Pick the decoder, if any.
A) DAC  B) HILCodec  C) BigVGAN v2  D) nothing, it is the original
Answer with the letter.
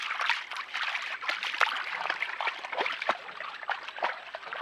C